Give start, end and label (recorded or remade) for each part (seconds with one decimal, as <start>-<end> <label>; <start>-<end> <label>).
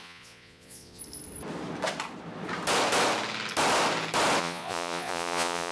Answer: 0.0-1.0 remade; 1.0-4.4 recorded; 4.4-5.7 remade